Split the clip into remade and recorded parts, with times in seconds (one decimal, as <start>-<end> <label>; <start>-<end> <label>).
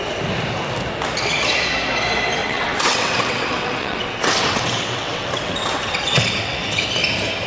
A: 0.0-2.4 recorded; 2.4-6.8 remade; 6.8-7.5 recorded